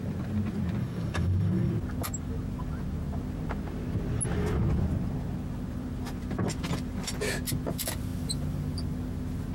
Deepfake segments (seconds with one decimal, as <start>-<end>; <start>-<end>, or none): 0.8-1.7